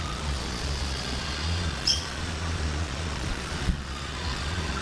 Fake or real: fake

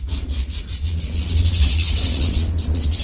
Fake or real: fake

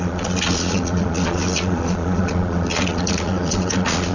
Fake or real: fake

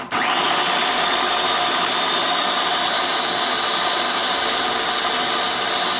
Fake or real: real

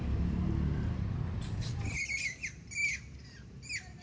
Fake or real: real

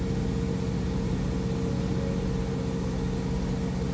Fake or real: real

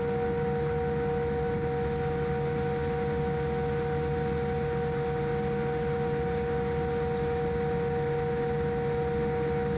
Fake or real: real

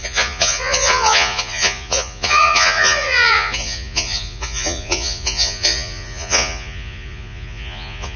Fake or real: fake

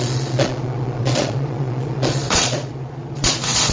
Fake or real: fake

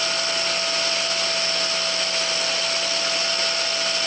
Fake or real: real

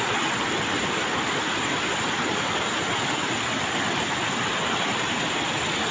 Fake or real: real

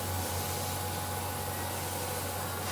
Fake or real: real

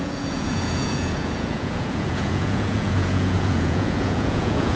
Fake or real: fake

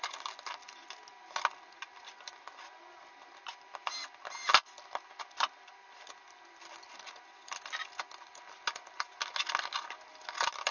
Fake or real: real